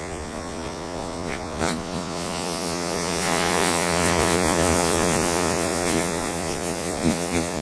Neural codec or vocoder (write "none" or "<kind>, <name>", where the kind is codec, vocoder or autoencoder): vocoder, Vocos